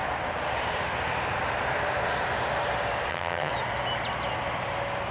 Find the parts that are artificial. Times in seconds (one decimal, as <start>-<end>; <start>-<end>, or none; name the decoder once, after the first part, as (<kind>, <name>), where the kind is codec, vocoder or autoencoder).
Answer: 3.1-3.5 (vocoder, HiFi-GAN)